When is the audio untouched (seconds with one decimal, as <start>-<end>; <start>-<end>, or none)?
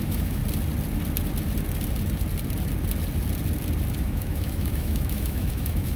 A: 0.4-4.0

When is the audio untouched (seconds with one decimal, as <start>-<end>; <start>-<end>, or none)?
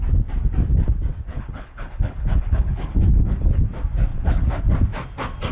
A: 0.0-1.3; 3.6-4.1; 4.6-5.5